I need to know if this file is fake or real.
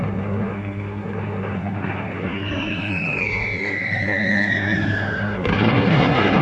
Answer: fake